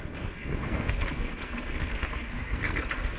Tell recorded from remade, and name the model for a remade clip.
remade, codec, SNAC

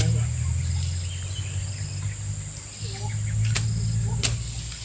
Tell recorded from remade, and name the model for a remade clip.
recorded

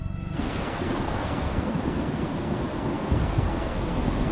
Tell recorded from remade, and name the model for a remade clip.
remade, codec, SNAC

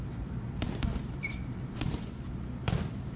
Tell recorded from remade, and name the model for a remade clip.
remade, vocoder, BigVGAN v2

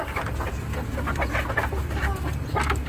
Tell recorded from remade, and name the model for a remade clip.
recorded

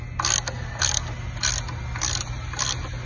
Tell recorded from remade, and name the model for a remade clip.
recorded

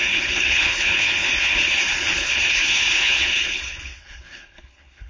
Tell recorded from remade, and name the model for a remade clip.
remade, codec, HILCodec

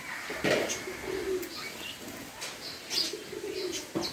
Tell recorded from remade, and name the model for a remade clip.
recorded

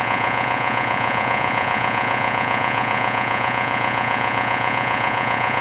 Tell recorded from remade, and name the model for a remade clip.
remade, vocoder, Vocos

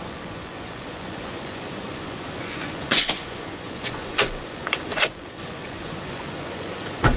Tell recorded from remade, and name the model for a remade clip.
remade, vocoder, Vocos